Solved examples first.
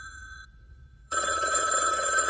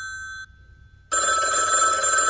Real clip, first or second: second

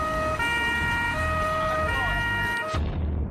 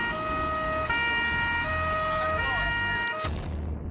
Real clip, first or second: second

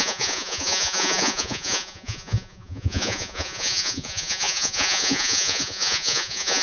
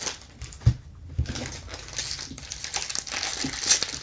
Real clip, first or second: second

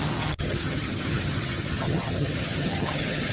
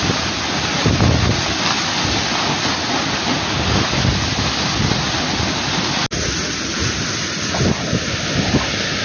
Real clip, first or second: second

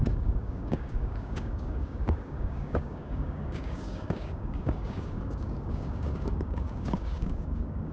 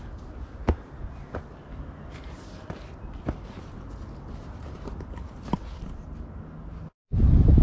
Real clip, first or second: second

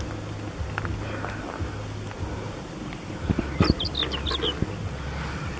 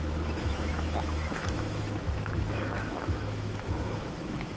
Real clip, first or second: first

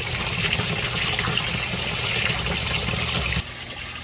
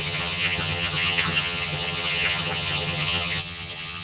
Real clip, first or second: first